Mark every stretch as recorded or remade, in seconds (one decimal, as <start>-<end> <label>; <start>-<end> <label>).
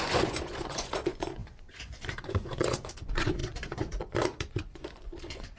0.0-5.6 remade